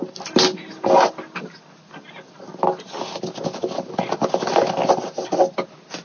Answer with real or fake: real